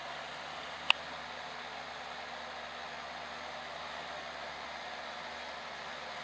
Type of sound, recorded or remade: recorded